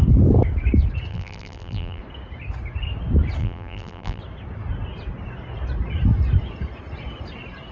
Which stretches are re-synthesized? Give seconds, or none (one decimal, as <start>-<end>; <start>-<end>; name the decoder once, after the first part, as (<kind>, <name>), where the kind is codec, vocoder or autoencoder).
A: 1.1-2.0 (vocoder, BigVGAN v2); 3.4-4.2